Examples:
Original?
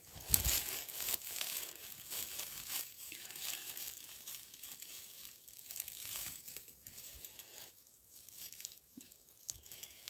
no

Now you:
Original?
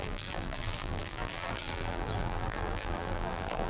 no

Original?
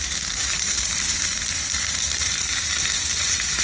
no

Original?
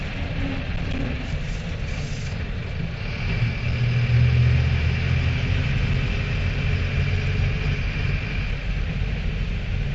yes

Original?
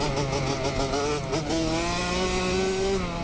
yes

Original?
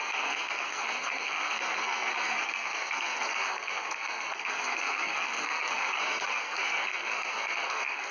no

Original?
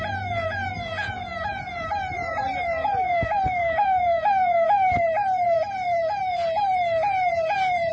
no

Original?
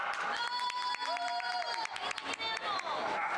yes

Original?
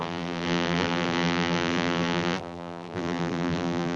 no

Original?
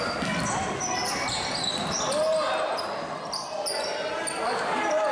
yes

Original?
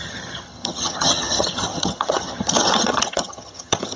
no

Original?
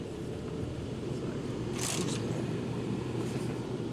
no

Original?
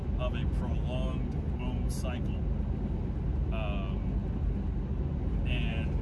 yes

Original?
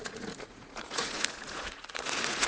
no